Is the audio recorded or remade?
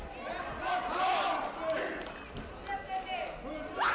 recorded